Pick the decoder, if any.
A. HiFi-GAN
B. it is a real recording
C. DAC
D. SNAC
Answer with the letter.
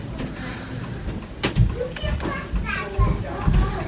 B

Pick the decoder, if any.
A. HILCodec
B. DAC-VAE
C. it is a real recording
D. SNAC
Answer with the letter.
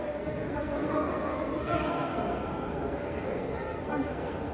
D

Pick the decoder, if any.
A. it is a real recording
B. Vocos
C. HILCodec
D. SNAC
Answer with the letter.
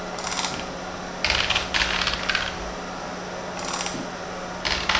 A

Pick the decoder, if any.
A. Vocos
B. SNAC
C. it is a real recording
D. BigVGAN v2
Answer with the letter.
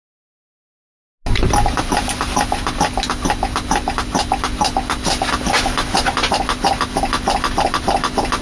C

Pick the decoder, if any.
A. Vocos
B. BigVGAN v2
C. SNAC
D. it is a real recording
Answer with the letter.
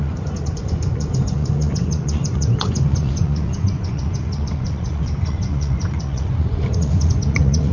A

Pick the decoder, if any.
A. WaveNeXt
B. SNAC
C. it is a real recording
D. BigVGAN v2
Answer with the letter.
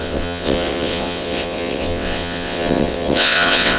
A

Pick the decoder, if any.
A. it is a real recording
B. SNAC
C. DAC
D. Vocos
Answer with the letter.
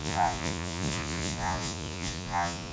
D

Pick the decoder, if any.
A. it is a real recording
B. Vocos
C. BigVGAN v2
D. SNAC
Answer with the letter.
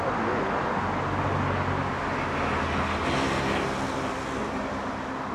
A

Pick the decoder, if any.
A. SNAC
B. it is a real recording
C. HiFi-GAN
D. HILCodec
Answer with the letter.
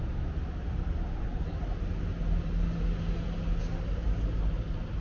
B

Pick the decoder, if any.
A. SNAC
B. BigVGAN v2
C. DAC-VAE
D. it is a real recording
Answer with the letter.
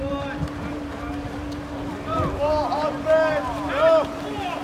B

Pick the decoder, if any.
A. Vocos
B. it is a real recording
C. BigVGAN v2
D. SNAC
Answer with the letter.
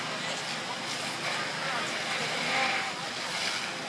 B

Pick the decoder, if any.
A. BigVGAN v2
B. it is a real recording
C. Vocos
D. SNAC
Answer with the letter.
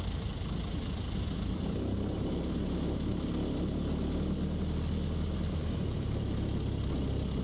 B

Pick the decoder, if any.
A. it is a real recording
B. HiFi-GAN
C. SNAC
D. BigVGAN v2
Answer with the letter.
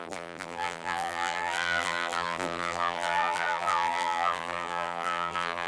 D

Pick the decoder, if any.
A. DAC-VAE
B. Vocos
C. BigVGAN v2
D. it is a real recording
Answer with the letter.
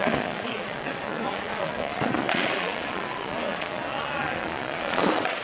B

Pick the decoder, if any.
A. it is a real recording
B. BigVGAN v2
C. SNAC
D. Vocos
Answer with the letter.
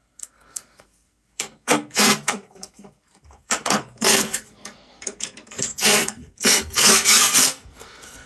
C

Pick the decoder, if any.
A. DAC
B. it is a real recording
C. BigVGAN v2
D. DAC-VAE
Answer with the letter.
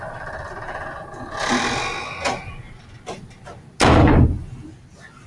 B